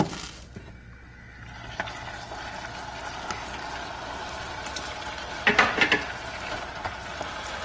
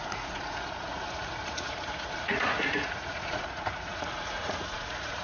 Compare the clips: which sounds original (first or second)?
first